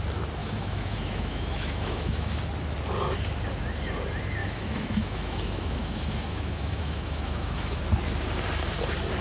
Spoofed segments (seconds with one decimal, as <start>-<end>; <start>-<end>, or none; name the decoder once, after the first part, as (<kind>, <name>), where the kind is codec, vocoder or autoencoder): 0.4-2.4 (autoencoder, DAC-VAE); 4.4-7.8